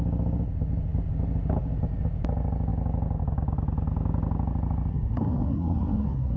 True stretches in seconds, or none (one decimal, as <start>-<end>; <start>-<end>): 0.0-4.9